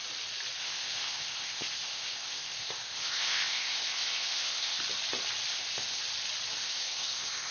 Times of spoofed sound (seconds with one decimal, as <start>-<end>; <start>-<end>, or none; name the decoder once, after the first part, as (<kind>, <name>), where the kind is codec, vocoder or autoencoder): 0.6-4.8 (codec, ZipCodec); 5.5-6.0; 6.6-7.5